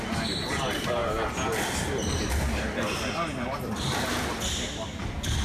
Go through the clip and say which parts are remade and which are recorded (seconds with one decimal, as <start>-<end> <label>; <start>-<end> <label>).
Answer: 0.0-5.4 recorded